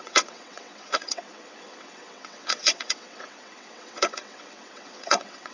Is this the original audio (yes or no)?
no